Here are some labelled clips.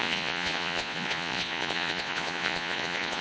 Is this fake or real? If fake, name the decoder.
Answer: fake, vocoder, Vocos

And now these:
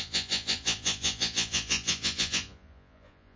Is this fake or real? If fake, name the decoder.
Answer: fake, vocoder, Vocos